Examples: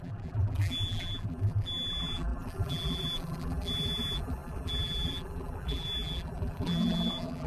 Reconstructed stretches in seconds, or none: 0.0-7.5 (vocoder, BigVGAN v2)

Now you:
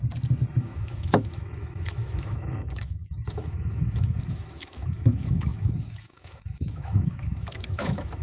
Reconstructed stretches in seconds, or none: 0.6-8.2 (autoencoder, DAC-VAE)

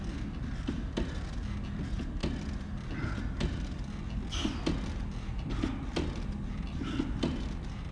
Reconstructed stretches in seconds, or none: none

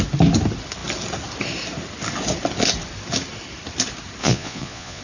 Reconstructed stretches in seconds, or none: 4.2-5.0 (vocoder, Vocos)